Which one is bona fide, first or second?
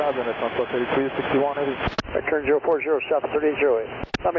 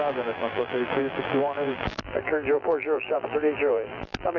first